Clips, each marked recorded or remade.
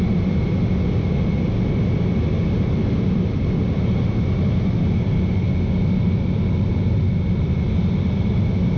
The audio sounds recorded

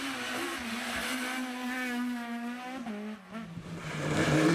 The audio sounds recorded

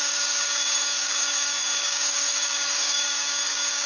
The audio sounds remade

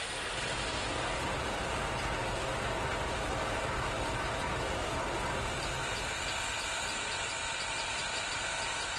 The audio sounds recorded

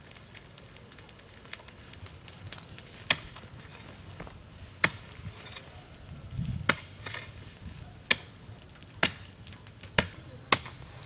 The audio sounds recorded